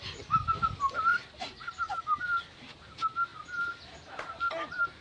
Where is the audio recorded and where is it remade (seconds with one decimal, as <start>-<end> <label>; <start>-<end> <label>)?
0.0-5.0 recorded